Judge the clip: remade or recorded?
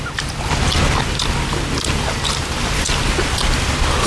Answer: recorded